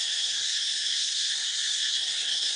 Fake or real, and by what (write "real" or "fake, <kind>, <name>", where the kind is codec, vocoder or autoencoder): fake, codec, SNAC